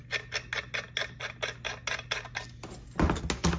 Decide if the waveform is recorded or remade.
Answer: recorded